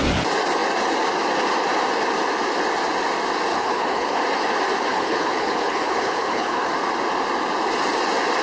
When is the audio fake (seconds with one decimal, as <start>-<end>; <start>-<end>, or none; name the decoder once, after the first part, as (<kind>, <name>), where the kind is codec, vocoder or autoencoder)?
3.5-4.2 (codec, HILCodec); 4.9-6.7